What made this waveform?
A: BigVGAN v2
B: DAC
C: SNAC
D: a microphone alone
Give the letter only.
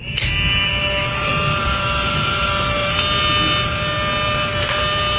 D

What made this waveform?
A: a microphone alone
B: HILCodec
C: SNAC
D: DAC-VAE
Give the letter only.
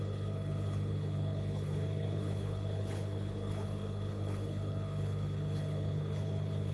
B